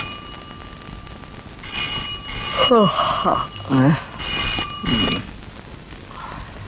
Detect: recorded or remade recorded